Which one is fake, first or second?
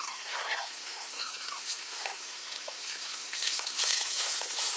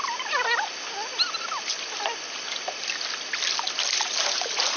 first